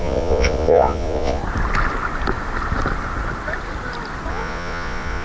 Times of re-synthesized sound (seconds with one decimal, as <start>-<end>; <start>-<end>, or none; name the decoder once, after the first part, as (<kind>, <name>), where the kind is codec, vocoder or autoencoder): 0.0-1.4 (vocoder, Vocos); 4.3-5.2